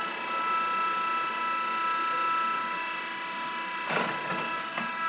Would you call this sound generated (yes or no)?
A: no